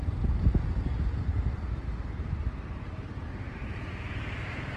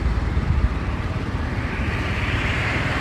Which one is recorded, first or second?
first